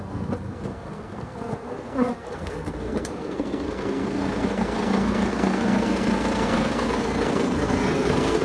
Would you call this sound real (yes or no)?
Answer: no